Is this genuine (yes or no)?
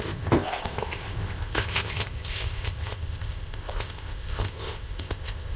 no